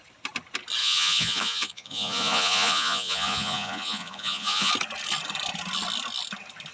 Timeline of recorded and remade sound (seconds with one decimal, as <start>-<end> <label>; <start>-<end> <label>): 0.0-0.8 recorded; 0.8-4.7 remade; 4.7-6.7 recorded